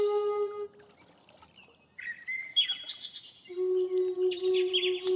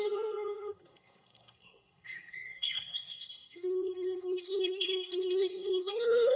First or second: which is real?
first